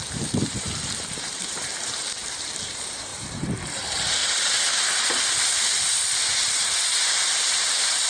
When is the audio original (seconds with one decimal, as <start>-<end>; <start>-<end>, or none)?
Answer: 4.2-6.6